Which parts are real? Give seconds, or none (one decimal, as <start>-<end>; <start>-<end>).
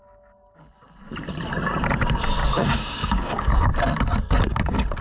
0.0-2.4; 3.5-5.0